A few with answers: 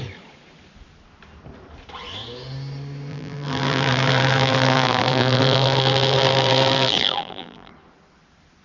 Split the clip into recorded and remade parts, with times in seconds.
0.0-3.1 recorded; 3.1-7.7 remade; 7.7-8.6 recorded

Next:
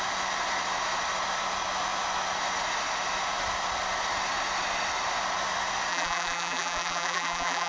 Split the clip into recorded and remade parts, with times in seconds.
0.0-5.9 recorded; 5.9-7.7 remade

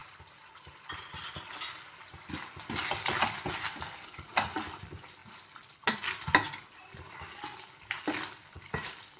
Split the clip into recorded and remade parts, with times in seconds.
0.0-9.2 recorded

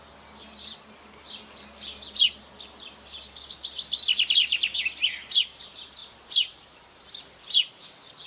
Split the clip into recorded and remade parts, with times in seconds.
0.0-6.0 recorded; 6.0-7.8 remade; 7.8-8.3 recorded

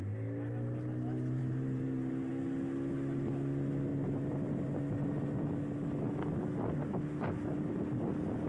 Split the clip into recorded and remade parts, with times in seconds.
0.0-1.4 recorded; 1.4-2.3 remade; 2.3-3.9 recorded; 3.9-4.7 remade; 4.7-8.5 recorded

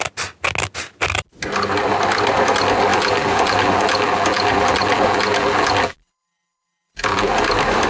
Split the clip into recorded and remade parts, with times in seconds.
0.0-2.9 recorded; 2.9-7.4 remade; 7.4-7.9 recorded